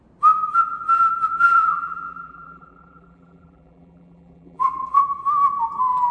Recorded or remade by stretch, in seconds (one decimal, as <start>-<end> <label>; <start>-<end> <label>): 0.0-1.3 recorded; 1.3-5.0 remade; 5.0-6.1 recorded